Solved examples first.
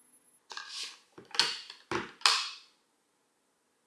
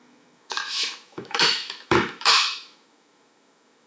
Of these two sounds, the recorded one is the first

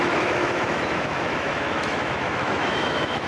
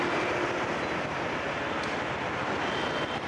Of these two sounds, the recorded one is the second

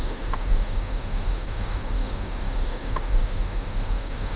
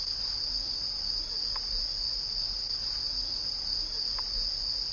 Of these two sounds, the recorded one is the second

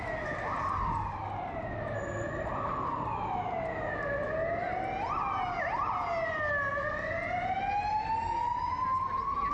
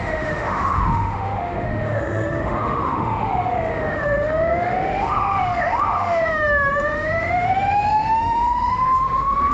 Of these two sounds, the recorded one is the first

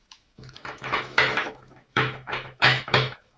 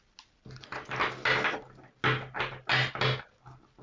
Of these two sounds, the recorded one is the second